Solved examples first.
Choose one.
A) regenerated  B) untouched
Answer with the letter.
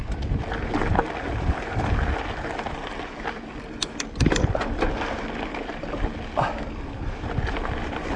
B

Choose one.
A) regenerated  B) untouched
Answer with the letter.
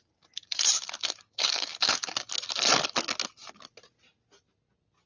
B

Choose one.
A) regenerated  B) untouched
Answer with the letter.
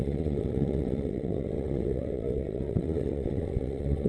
A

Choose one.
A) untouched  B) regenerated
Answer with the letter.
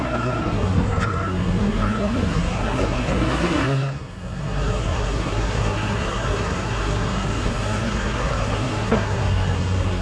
B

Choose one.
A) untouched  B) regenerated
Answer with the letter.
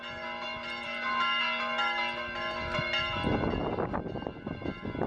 A